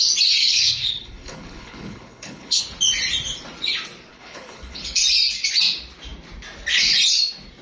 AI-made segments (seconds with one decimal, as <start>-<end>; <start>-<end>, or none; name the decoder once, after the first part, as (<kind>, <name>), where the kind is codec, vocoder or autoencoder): 0.4-2.6 (codec, HILCodec); 4.1-5.0